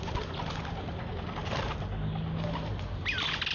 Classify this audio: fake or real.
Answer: real